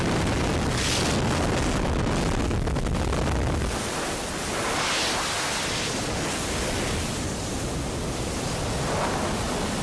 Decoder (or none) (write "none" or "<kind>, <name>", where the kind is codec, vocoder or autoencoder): none